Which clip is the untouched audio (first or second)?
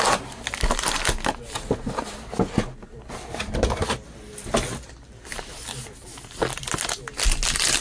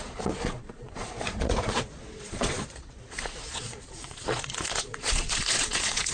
first